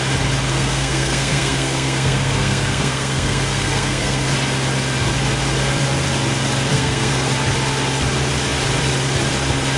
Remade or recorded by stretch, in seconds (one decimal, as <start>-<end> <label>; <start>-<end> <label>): 0.0-0.5 recorded; 0.5-4.3 remade; 4.3-6.7 recorded; 6.7-7.3 remade; 7.3-9.8 recorded